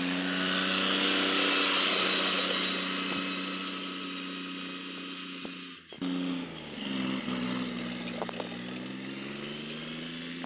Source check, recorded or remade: recorded